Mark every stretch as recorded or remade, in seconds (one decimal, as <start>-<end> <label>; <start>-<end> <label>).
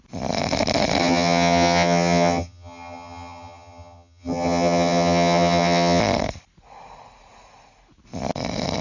0.0-1.0 recorded; 1.0-6.0 remade; 6.0-8.8 recorded